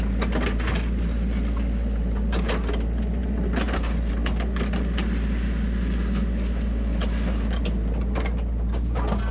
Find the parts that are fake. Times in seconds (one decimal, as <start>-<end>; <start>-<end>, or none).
none